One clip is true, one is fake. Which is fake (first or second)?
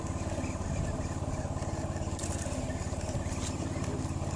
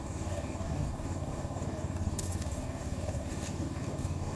second